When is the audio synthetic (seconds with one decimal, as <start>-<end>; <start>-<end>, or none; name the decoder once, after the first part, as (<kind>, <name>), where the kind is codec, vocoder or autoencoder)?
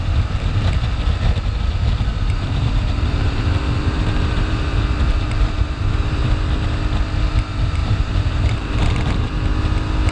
2.1-6.2 (vocoder, BigVGAN v2); 7.8-9.3